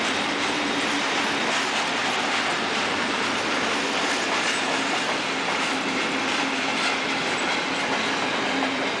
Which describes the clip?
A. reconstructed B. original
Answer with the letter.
B